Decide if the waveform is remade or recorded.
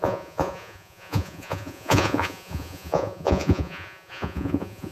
remade